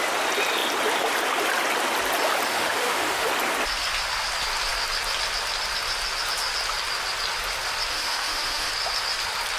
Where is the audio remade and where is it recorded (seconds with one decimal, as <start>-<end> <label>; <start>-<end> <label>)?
0.0-2.5 recorded; 2.5-3.3 remade; 3.3-7.9 recorded; 7.9-8.7 remade; 8.7-9.6 recorded